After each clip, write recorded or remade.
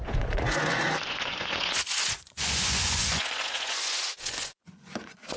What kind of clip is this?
remade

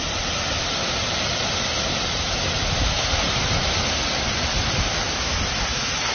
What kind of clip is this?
recorded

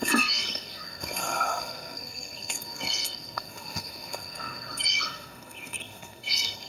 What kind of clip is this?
remade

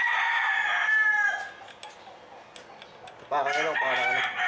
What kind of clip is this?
recorded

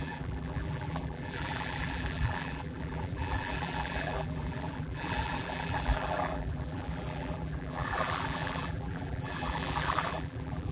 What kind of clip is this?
remade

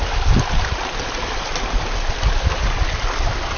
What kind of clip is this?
recorded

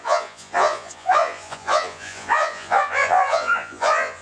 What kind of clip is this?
remade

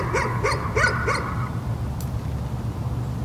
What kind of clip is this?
recorded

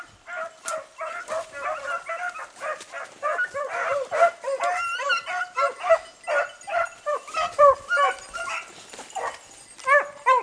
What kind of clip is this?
recorded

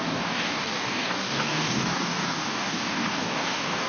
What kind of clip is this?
remade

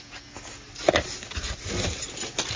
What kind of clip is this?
recorded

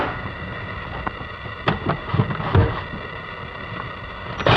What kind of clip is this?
recorded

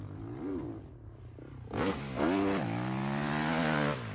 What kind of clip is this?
recorded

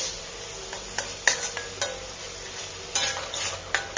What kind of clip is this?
recorded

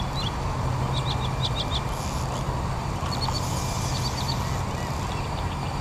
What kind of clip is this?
recorded